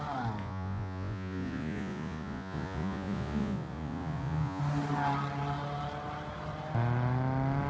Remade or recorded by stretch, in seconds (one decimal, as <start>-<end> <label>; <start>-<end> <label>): 0.0-0.4 recorded; 0.4-4.6 remade; 4.6-7.7 recorded